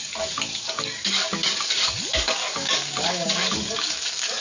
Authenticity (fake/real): fake